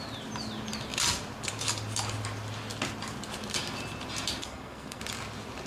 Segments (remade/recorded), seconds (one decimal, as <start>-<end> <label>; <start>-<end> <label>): 0.0-4.4 recorded; 4.4-5.0 remade; 5.0-5.7 recorded